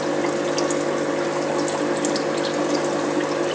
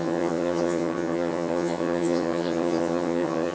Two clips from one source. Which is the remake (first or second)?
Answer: second